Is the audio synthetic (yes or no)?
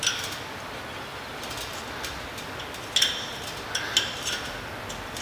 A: no